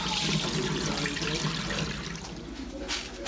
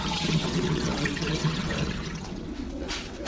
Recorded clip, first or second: first